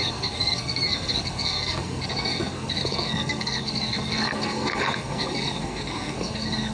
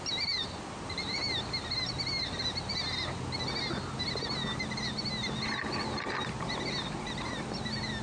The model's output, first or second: first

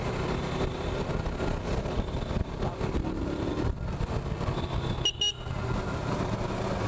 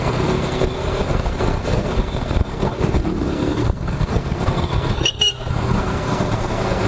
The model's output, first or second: second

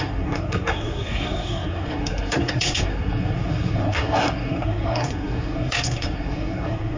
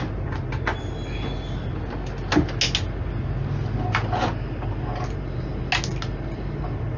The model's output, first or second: first